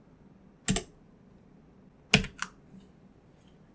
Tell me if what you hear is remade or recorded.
recorded